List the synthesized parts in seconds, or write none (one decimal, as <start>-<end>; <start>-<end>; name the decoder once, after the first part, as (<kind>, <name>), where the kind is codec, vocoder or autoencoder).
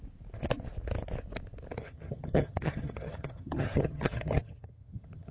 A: 1.8-5.3 (vocoder, HiFi-GAN)